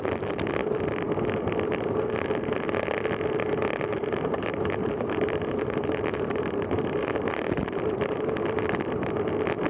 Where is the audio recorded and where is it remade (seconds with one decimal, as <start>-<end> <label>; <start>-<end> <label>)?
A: 0.0-3.9 recorded; 3.9-8.3 remade; 8.3-9.7 recorded

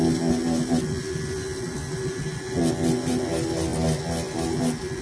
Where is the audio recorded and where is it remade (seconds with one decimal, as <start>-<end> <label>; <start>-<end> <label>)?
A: 0.0-5.0 recorded

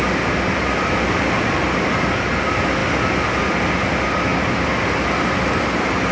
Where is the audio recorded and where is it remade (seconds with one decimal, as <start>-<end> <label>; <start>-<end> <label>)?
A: 0.0-6.1 recorded

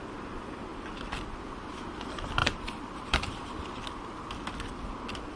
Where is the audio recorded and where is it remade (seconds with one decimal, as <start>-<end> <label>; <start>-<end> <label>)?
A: 0.0-2.4 recorded; 2.4-3.3 remade; 3.3-5.4 recorded

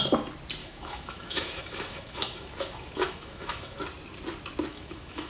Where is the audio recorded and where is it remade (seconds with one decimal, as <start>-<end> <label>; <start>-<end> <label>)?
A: 0.0-0.6 recorded; 0.6-3.8 remade; 3.8-4.7 recorded; 4.7-5.3 remade